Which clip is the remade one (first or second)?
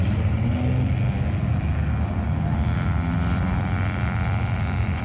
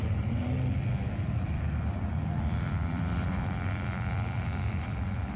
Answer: second